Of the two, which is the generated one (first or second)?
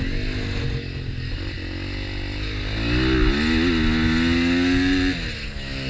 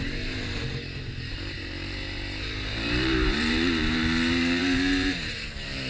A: second